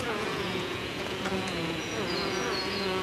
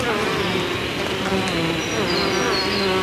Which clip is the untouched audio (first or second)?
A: second